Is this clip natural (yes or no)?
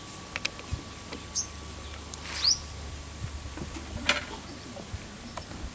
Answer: yes